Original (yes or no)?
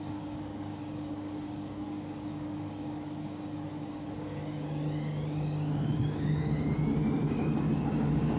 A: no